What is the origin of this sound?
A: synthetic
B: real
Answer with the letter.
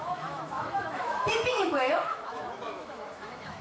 A